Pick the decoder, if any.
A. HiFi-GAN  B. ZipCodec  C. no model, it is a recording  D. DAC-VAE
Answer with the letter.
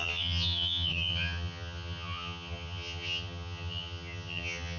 A